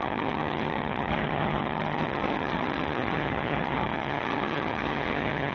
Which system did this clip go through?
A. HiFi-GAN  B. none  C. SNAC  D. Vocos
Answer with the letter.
A